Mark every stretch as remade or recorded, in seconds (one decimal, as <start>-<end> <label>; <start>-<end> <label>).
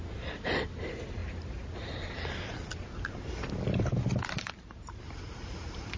0.0-6.0 recorded